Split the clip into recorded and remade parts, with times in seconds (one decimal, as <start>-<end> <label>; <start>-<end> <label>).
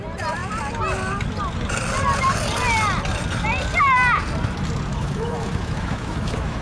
0.0-4.9 recorded; 4.9-6.6 remade